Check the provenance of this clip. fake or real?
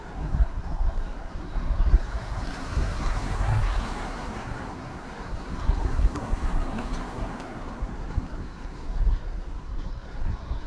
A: fake